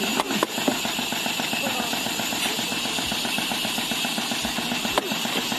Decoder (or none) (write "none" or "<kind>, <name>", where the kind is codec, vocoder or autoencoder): vocoder, BigVGAN v2